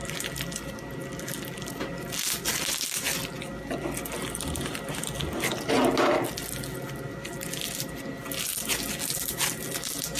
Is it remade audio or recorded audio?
recorded